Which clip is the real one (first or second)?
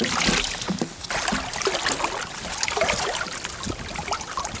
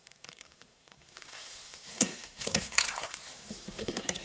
first